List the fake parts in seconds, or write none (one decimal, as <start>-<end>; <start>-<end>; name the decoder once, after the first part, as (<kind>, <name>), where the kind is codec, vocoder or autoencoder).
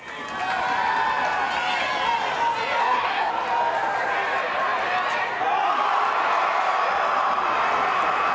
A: 2.8-3.3 (codec, SNAC)